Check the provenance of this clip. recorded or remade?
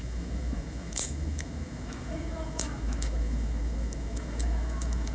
remade